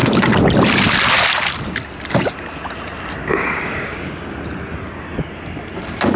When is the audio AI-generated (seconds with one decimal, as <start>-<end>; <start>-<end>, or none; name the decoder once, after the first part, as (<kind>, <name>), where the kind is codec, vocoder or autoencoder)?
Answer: 3.2-4.3 (codec, DAC)